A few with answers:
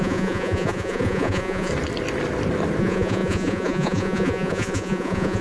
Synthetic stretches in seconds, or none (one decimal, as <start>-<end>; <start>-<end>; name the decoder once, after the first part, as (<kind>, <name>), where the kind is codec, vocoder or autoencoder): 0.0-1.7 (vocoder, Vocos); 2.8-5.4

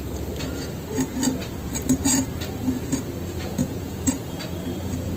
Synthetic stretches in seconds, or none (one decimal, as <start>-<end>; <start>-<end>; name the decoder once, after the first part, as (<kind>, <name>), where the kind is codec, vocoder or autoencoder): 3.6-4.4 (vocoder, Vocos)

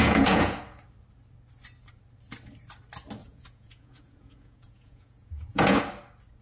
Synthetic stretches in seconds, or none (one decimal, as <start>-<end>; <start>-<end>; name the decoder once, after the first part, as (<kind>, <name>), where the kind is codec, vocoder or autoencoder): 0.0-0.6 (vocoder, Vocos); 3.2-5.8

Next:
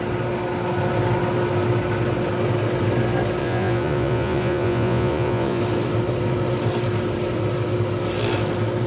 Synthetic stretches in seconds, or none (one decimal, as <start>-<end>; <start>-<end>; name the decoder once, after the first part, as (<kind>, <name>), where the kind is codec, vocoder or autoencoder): 3.4-5.6 (vocoder, Vocos)

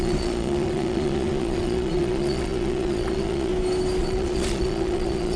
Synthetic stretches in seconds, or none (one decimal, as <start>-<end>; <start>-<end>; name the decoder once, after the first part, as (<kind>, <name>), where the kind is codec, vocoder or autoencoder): 0.0-3.5 (vocoder, Vocos); 4.0-5.4

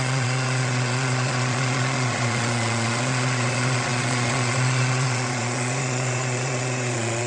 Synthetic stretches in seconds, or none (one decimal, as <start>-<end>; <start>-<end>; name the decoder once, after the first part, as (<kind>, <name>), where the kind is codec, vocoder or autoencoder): 0.0-7.3 (vocoder, Vocos)

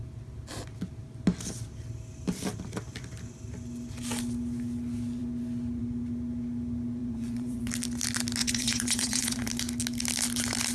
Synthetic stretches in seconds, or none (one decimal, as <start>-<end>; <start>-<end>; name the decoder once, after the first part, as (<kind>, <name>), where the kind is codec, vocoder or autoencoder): 7.0-7.7 (vocoder, Vocos); 8.4-9.5

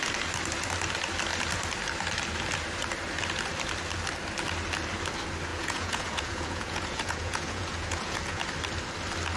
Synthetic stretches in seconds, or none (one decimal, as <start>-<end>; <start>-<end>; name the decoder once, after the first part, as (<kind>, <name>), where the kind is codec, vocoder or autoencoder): 5.5-8.4 (vocoder, Vocos)